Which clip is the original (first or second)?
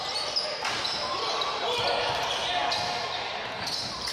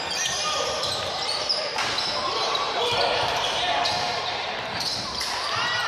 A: first